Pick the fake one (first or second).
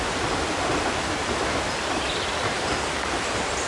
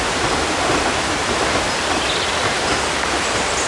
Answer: first